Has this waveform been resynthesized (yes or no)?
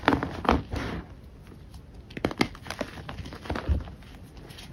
no